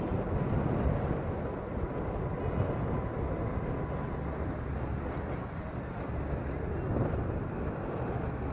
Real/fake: real